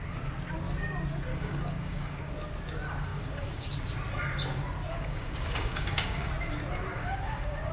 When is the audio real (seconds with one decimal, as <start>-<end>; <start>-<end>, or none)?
0.0-1.3; 2.3-3.1; 3.7-4.9; 6.3-6.9